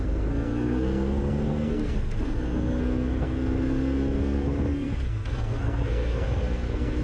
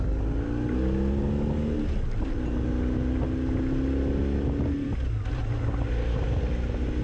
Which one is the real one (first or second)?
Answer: second